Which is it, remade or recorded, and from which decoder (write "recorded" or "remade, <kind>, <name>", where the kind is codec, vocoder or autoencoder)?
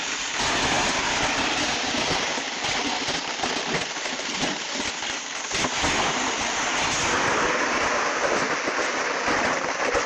recorded